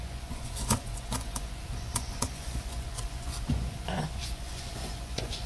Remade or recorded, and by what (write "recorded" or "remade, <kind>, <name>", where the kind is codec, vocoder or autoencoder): remade, vocoder, Vocos